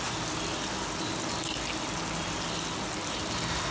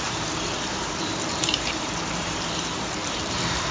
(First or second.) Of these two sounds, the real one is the first